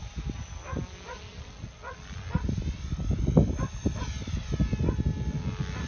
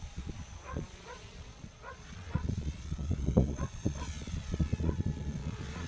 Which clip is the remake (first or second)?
second